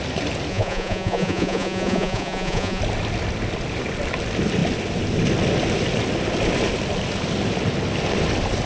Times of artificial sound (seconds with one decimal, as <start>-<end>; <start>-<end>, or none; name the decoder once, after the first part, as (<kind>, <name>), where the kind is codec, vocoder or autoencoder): 0.5-2.8 (vocoder, Vocos)